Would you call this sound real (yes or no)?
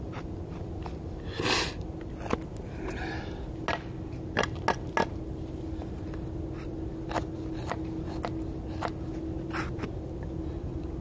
yes